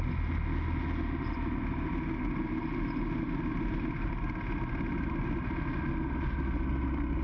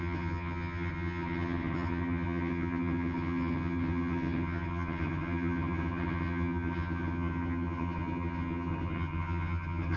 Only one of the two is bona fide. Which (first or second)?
first